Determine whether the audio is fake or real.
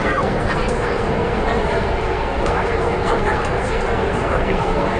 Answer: fake